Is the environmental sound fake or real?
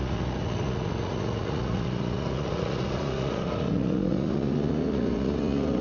fake